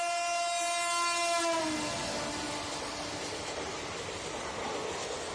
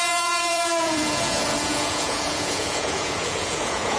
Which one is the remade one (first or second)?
second